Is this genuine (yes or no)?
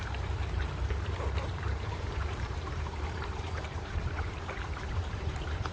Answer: no